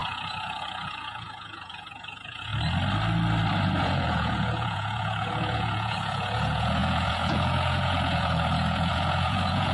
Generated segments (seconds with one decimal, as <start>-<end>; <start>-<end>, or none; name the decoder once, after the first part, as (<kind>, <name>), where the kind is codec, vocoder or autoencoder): 0.0-2.5 (vocoder, Vocos); 3.8-9.7